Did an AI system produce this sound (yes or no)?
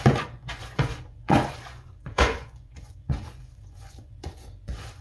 yes